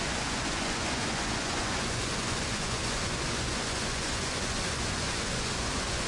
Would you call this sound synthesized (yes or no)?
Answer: yes